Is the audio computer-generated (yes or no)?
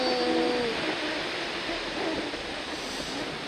no